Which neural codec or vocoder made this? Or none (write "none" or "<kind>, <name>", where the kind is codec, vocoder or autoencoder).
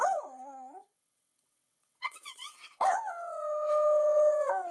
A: vocoder, WaveNeXt